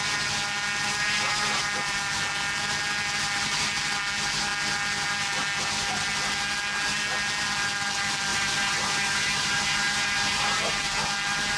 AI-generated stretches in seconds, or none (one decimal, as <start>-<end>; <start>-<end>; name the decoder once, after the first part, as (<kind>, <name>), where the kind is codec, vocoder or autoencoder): 1.0-1.6 (vocoder, BigVGAN v2); 8.3-10.7